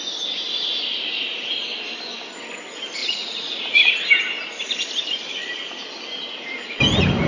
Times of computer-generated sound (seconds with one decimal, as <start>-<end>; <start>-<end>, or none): 3.0-3.9